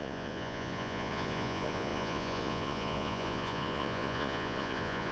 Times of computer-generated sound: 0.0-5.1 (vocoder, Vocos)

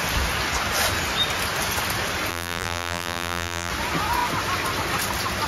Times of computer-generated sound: 2.3-3.7 (vocoder, BigVGAN v2)

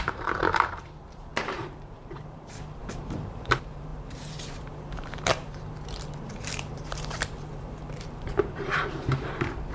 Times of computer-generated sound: 0.0-9.7 (vocoder, BigVGAN v2)

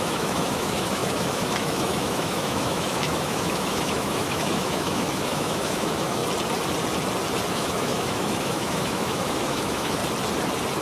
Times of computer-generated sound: 0.0-6.2 (autoencoder, DAC-VAE); 7.5-10.0

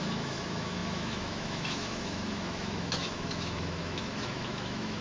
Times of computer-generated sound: 0.0-5.0 (autoencoder, DAC-VAE)

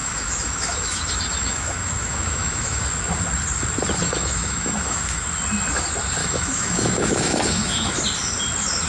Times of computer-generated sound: 0.0-2.8 (autoencoder, DAC-VAE); 4.0-5.2; 6.2-8.0

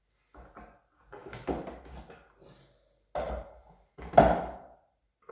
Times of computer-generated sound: none

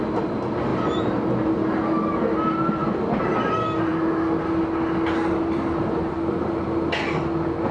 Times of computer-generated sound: none